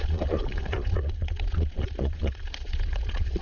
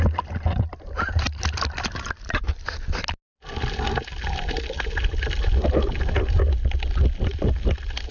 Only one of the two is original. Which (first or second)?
second